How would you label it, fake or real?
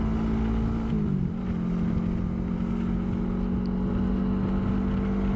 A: real